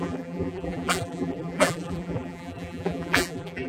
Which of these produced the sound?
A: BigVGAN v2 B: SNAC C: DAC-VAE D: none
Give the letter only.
A